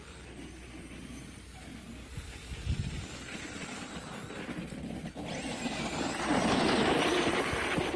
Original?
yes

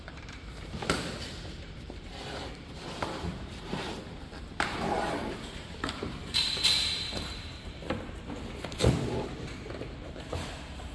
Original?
no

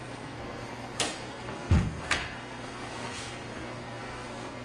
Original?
no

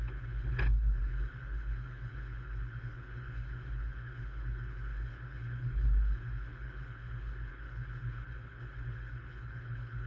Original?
no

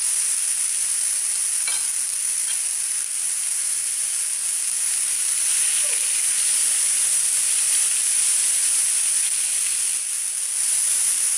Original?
yes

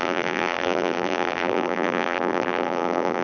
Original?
no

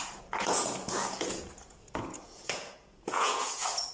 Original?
no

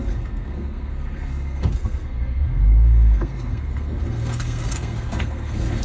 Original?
no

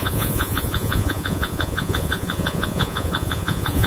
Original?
no